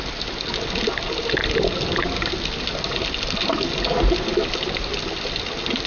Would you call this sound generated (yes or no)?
no